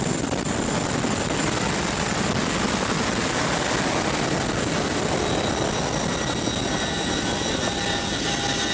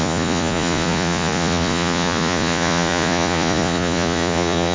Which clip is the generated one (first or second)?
second